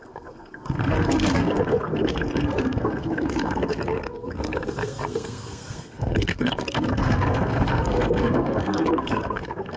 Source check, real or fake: fake